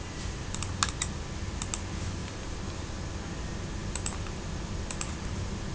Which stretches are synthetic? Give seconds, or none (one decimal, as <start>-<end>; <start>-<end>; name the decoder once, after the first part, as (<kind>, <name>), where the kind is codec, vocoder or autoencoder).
2.2-2.9 (vocoder, BigVGAN v2)